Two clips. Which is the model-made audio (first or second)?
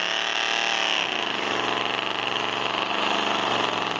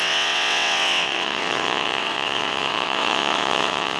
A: second